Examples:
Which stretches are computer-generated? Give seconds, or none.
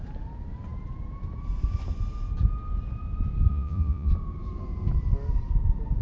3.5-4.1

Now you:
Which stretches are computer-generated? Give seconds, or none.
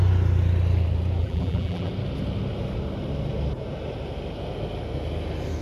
1.2-1.9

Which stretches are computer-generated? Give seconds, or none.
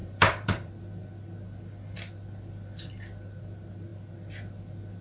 0.0-0.7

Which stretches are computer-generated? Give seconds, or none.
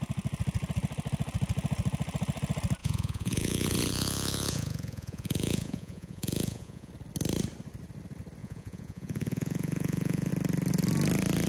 2.8-6.9; 8.4-10.3